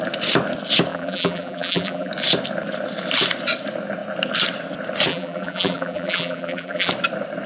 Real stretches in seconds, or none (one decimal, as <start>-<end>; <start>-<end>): 0.0-0.9; 2.1-5.1; 6.9-7.5

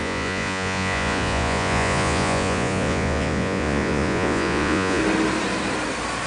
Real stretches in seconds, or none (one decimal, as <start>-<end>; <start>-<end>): 5.0-6.3

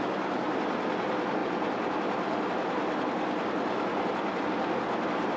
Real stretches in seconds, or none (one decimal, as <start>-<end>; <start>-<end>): 0.0-5.4

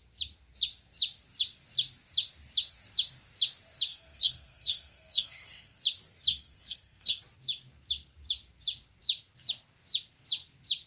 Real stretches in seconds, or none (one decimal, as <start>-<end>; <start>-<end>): 0.0-3.9; 5.8-6.3; 7.2-10.9

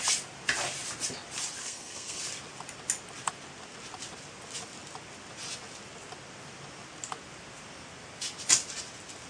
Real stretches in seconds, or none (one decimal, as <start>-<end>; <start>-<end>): 0.0-1.6; 2.2-9.3

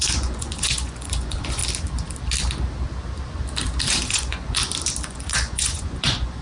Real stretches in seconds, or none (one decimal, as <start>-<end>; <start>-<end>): 1.6-3.9; 4.6-5.1

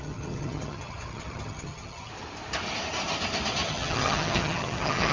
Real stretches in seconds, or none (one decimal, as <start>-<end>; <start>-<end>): 2.1-3.7

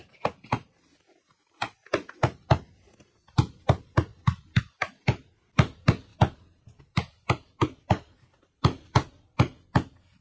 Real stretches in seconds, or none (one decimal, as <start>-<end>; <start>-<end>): 6.1-6.8